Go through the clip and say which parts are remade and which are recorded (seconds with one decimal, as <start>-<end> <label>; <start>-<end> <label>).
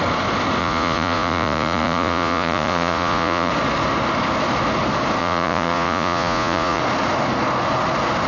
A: 0.0-0.6 recorded; 0.6-3.5 remade; 3.5-5.2 recorded; 5.2-6.8 remade; 6.8-8.3 recorded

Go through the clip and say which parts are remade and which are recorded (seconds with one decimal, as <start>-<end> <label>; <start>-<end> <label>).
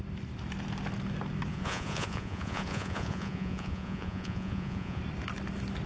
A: 0.0-1.5 recorded; 1.5-5.0 remade; 5.0-5.9 recorded